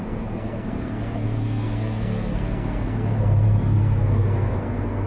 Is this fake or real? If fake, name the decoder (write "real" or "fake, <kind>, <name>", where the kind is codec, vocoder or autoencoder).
fake, codec, SNAC